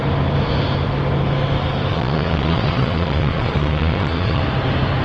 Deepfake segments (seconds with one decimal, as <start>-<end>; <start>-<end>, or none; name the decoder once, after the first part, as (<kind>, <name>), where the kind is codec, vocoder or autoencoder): 1.9-4.4 (vocoder, Vocos)